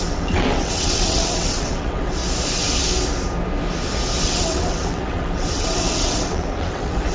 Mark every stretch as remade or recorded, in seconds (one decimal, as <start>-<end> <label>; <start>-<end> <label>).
0.0-2.2 remade; 2.2-4.2 recorded; 4.2-7.1 remade